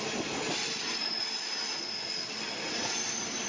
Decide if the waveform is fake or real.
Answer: real